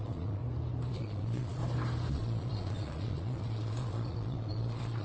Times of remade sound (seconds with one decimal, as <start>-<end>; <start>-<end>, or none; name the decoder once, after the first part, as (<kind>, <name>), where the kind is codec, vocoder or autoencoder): 0.0-0.4 (vocoder, Vocos); 0.9-1.6; 2.1-5.0